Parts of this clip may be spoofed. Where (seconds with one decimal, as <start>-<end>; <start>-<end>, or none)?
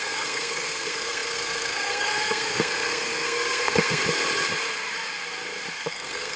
0.0-4.0; 5.9-6.4